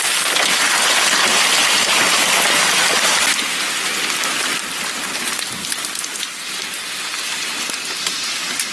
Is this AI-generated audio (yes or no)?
no